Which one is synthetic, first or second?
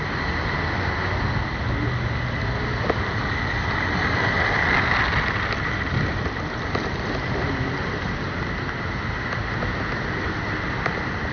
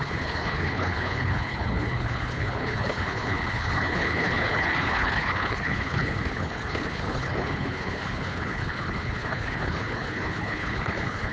second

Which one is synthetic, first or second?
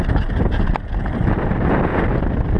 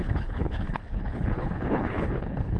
second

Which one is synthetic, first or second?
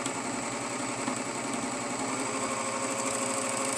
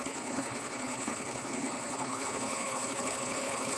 second